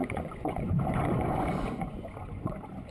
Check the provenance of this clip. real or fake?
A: fake